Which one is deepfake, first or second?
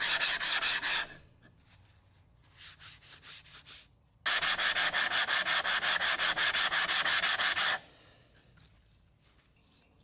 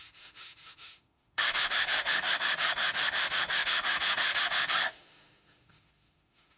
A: second